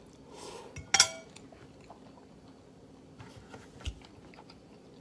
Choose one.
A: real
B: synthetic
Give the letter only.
A